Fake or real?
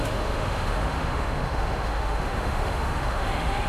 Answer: fake